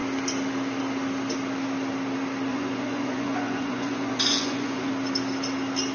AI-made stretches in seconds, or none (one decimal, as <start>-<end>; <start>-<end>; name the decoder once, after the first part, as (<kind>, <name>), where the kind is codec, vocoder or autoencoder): 2.5-4.9 (vocoder, Vocos)